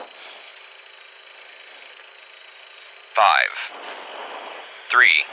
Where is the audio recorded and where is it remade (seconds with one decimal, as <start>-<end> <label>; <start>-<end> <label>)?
0.0-0.5 recorded; 0.5-3.7 remade; 3.7-4.2 recorded; 4.2-5.3 remade